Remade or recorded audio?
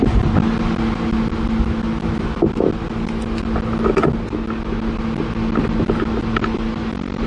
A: recorded